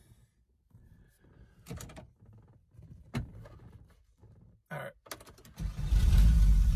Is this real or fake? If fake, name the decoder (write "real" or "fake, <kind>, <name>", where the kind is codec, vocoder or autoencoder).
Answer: real